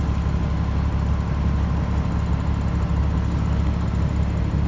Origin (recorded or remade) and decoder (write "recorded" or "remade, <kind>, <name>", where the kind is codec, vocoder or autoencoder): recorded